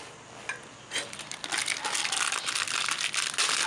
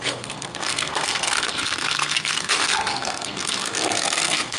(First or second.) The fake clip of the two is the second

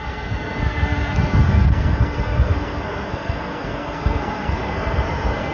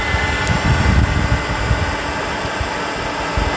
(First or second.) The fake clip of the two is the first